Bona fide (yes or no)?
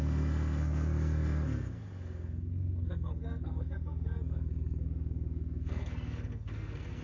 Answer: no